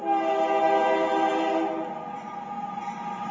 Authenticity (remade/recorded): recorded